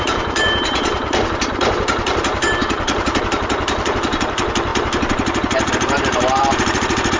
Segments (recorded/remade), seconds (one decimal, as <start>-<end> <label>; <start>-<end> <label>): 0.0-7.2 remade